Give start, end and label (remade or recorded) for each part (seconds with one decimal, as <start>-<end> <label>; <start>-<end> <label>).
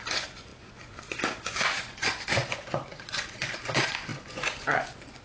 0.0-5.2 remade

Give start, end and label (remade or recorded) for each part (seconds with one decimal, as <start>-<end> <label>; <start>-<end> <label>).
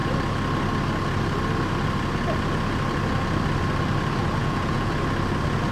0.0-4.4 recorded; 4.4-4.9 remade; 4.9-5.7 recorded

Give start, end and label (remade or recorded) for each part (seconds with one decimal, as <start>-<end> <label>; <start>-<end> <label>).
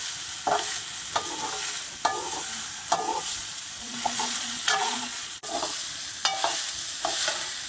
0.0-3.1 recorded; 3.1-5.8 remade; 5.8-7.7 recorded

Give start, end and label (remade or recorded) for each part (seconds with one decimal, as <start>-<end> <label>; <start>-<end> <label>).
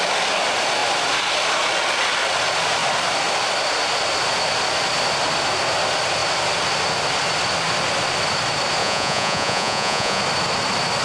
0.0-8.8 recorded; 8.8-10.2 remade; 10.2-11.0 recorded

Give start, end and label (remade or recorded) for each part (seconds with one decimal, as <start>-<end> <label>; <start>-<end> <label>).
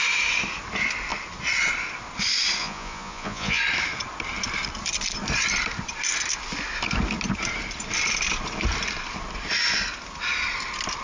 0.0-2.6 recorded; 2.6-3.6 remade; 3.6-11.0 recorded